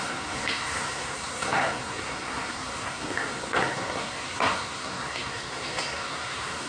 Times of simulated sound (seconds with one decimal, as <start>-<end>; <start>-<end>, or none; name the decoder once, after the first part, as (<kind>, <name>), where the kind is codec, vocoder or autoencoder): 0.0-6.7 (codec, SNAC)